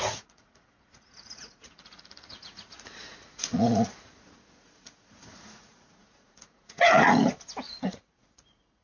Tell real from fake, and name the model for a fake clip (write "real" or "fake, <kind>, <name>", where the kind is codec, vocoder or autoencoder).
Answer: fake, vocoder, Vocos